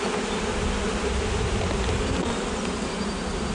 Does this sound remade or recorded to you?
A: recorded